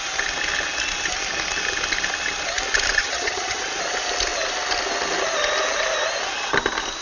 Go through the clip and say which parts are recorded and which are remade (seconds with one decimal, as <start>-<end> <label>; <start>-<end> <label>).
0.0-3.0 recorded; 3.0-3.6 remade; 3.6-7.0 recorded